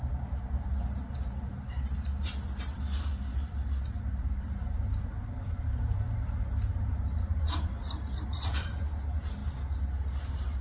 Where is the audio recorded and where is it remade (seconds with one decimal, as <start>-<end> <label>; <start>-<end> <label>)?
0.0-9.4 remade; 9.4-10.2 recorded; 10.2-10.6 remade